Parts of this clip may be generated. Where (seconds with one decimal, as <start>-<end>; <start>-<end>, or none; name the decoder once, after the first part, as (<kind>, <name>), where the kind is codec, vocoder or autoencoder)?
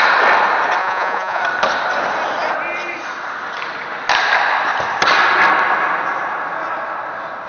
0.8-1.4 (vocoder, Vocos)